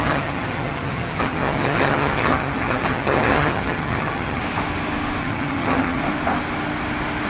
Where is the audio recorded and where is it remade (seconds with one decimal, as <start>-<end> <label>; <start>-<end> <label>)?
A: 0.0-4.4 remade; 4.4-5.2 recorded; 5.2-6.0 remade; 6.0-7.3 recorded